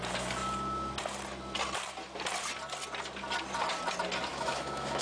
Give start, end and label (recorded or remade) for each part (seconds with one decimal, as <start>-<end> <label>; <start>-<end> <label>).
0.0-4.3 recorded; 4.3-5.0 remade